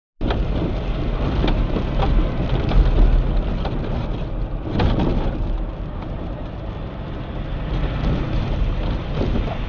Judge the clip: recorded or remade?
recorded